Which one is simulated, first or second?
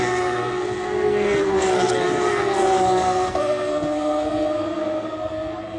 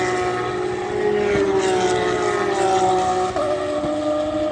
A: first